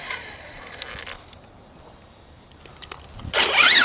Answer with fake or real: real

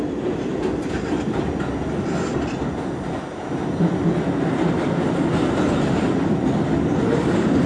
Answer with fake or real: real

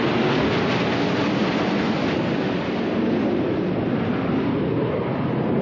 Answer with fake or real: real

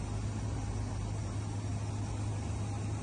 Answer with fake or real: real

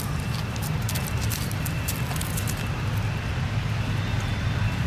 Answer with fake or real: real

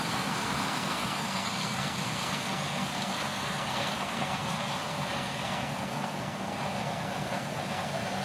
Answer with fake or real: fake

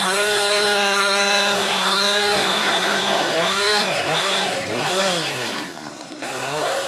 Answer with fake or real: fake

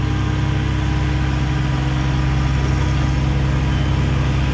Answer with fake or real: real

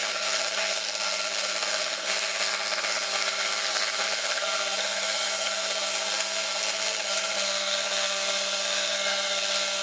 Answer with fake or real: fake